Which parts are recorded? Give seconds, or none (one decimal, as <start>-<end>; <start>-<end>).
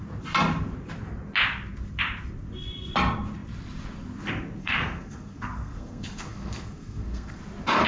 0.0-4.6; 7.4-7.9